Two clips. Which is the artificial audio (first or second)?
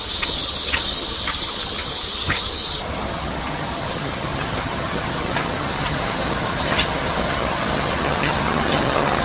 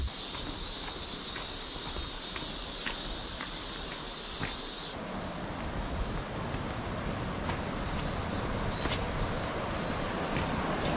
first